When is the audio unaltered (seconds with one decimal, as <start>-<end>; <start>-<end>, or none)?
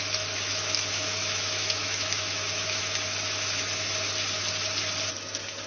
3.9-5.7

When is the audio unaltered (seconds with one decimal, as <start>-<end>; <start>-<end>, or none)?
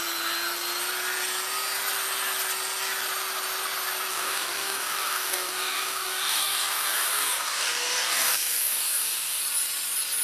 0.0-4.1; 9.4-10.2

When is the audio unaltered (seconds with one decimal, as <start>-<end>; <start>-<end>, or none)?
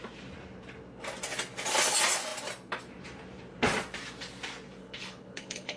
0.0-4.8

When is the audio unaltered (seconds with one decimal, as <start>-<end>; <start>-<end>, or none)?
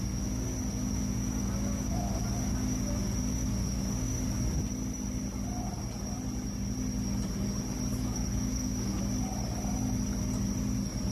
0.0-7.9; 9.0-11.1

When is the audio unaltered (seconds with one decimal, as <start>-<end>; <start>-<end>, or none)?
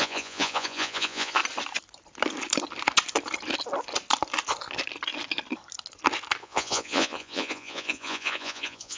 1.4-6.4